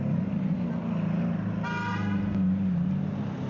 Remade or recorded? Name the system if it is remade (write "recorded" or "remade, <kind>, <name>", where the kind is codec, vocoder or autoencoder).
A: recorded